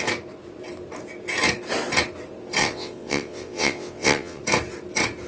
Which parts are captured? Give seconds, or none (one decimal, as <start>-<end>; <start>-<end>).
0.0-2.6; 4.4-5.3